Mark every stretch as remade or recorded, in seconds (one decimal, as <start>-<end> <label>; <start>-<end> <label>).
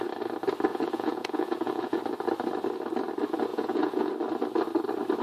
0.0-0.7 recorded; 0.7-2.0 remade; 2.0-3.5 recorded; 3.5-4.1 remade; 4.1-5.2 recorded